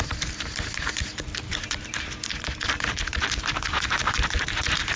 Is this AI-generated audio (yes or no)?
yes